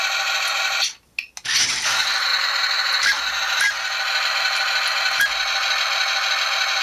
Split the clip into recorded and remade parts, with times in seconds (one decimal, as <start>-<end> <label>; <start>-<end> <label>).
0.0-6.8 recorded